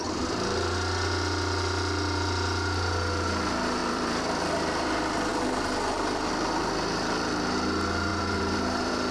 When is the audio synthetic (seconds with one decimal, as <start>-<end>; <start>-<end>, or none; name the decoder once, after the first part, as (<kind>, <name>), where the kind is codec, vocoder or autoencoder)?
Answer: 3.8-4.4 (vocoder, BigVGAN v2); 5.3-6.3; 8.1-9.1